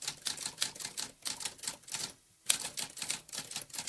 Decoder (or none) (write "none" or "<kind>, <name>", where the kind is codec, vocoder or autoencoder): none